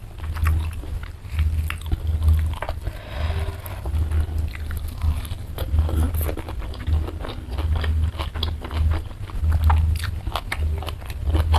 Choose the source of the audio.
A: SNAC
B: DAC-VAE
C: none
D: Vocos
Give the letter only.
C